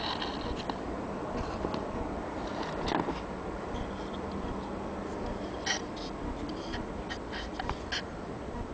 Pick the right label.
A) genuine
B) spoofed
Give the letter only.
A